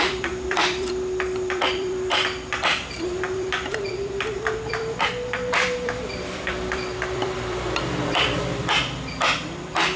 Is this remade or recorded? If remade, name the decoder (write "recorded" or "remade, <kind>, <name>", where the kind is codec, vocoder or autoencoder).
remade, vocoder, BigVGAN v2